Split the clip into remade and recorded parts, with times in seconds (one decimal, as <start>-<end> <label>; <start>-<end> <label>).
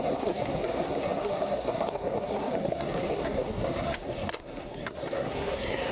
0.0-5.9 remade